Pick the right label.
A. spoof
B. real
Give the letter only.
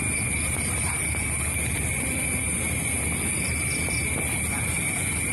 B